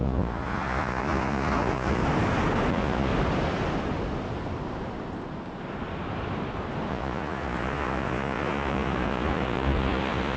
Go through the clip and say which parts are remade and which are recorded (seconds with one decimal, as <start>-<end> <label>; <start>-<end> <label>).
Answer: 0.0-2.0 remade; 2.0-2.7 recorded; 2.7-3.1 remade; 3.1-6.9 recorded; 6.9-10.4 remade